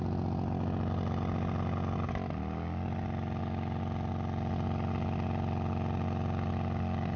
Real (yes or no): yes